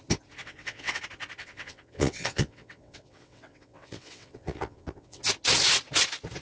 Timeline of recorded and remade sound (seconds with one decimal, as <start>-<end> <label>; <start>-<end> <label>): 0.0-0.4 recorded; 0.4-1.0 remade; 1.0-1.4 recorded; 1.4-5.2 remade; 5.2-6.4 recorded